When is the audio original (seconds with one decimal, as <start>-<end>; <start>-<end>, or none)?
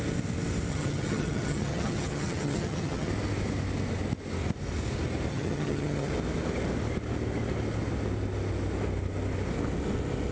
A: 0.0-0.7; 3.1-5.3; 6.1-10.3